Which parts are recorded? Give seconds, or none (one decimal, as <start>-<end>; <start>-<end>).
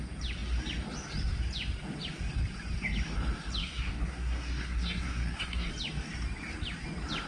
0.0-3.6; 5.7-7.3